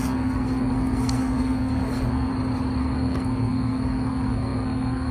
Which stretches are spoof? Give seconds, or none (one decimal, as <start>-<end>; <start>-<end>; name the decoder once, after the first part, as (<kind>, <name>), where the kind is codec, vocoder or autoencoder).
0.0-2.3 (codec, SNAC); 2.8-5.1